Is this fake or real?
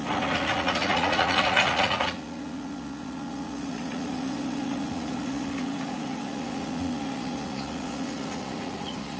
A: fake